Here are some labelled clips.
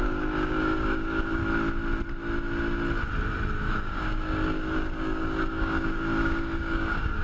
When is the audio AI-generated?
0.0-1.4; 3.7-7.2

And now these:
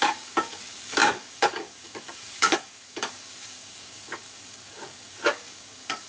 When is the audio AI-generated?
0.0-6.1